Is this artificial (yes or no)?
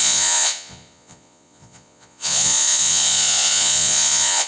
yes